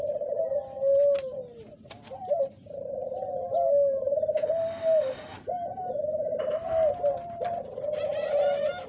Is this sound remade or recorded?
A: remade